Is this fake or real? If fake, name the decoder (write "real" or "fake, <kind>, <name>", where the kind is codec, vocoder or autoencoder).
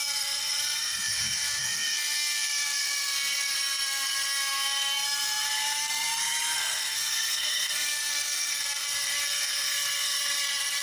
fake, codec, SNAC